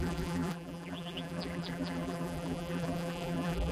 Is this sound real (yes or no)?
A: no